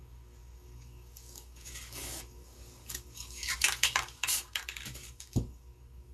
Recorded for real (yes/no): no